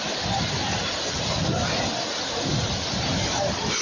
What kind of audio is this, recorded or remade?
recorded